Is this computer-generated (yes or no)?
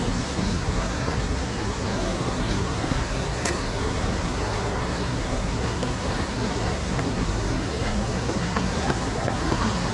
yes